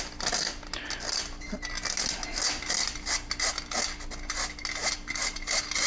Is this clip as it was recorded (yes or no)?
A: yes